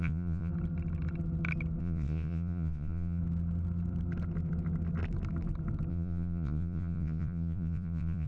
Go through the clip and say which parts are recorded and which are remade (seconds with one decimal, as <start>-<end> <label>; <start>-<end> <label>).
0.0-0.5 remade; 0.5-1.8 recorded; 1.8-3.2 remade; 3.2-5.9 recorded; 5.9-8.3 remade